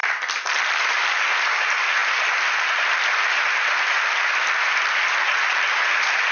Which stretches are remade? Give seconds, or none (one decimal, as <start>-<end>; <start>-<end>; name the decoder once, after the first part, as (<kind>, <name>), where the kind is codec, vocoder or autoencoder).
0.0-0.5 (vocoder, BigVGAN v2); 2.0-2.5